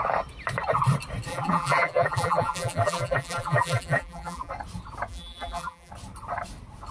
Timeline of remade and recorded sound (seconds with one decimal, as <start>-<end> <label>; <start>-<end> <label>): 0.0-1.3 recorded; 1.3-4.5 remade; 4.5-5.1 recorded; 5.1-5.9 remade; 5.9-6.9 recorded